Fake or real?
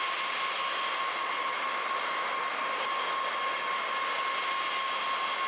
real